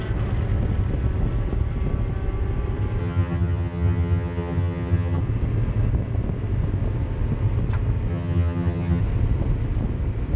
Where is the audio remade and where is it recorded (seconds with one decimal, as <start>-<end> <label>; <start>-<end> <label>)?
0.0-3.0 recorded; 3.0-5.2 remade; 5.2-8.1 recorded; 8.1-9.0 remade; 9.0-10.4 recorded